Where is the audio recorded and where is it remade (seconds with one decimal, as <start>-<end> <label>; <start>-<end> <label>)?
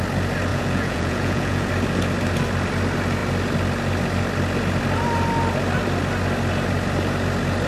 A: 0.0-0.5 recorded; 0.5-1.7 remade; 1.7-7.7 recorded